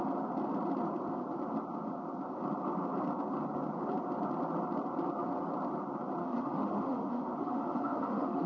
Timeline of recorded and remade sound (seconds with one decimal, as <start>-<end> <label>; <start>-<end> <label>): 0.0-6.2 recorded; 6.2-8.5 remade